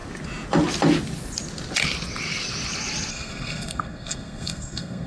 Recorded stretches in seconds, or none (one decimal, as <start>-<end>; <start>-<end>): 0.0-3.1